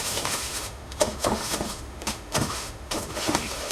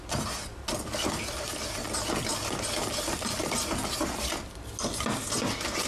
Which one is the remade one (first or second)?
first